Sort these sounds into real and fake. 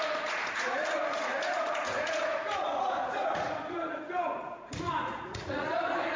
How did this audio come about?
fake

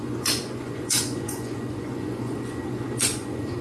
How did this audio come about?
fake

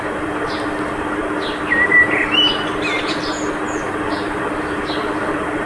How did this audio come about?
real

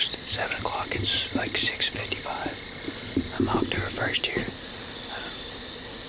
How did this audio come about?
real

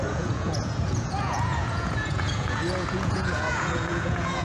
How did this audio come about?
fake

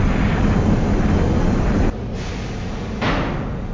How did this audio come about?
real